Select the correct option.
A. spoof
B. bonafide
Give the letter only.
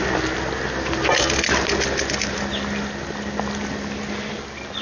B